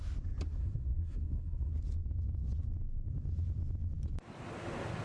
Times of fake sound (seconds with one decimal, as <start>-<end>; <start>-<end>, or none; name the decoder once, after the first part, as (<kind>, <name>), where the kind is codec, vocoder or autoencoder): 0.6-1.7 (codec, SNAC)